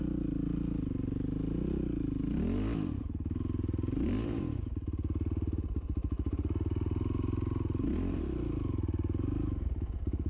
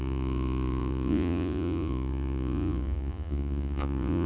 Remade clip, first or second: second